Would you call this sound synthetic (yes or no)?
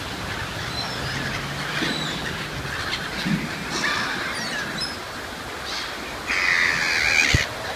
no